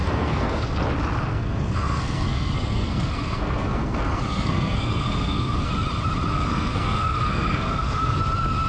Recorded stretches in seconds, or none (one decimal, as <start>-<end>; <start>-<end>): 0.8-1.3; 5.7-6.3; 8.2-8.7